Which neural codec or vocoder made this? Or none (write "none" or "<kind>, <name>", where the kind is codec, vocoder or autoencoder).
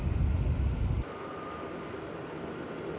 none